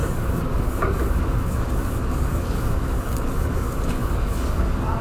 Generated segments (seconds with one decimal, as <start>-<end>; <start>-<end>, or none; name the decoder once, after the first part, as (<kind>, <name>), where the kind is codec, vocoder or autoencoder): 0.0-5.0 (codec, DAC)